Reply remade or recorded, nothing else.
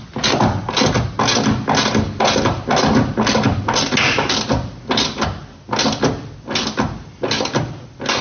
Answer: recorded